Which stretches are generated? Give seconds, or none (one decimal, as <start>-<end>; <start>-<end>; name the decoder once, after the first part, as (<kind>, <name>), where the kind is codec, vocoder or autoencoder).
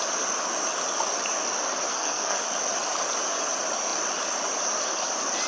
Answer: 1.9-2.4 (codec, SNAC)